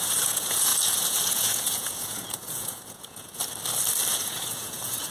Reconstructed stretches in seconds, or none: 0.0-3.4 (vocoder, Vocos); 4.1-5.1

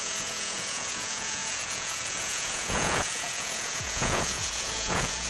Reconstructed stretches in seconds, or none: 0.0-5.3 (vocoder, Vocos)

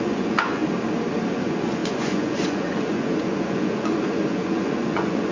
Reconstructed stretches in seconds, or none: 0.0-0.6 (vocoder, Vocos); 1.3-5.3

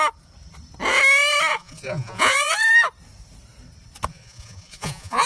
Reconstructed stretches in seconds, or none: 1.5-2.5 (vocoder, Vocos); 4.1-5.3

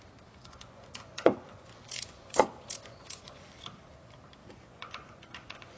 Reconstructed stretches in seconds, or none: 0.4-3.5 (vocoder, Vocos); 4.4-5.8

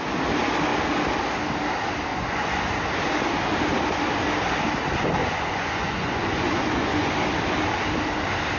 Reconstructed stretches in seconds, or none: 2.1-2.6 (vocoder, Vocos); 5.2-7.1

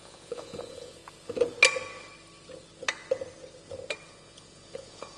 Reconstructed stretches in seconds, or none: 0.0-1.0 (vocoder, Vocos); 4.1-5.2

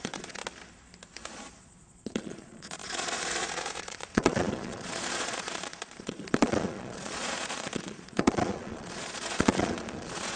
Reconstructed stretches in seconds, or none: 0.0-0.4 (vocoder, Vocos); 1.6-10.4